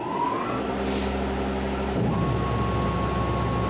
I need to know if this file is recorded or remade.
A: recorded